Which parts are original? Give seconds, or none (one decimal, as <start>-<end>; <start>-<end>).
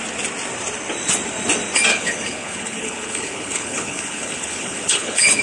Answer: 0.0-1.9